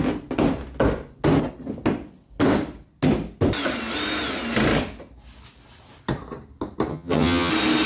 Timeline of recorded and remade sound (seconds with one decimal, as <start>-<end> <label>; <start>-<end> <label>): 0.0-6.9 recorded; 6.9-7.5 remade; 7.5-7.9 recorded